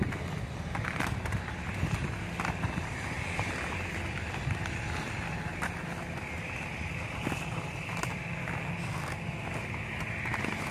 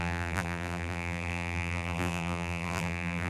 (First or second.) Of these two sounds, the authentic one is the first